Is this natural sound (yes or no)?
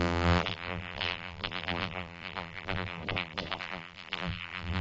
no